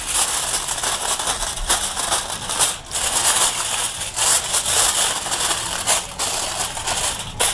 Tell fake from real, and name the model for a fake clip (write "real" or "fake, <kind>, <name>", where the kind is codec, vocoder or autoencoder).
real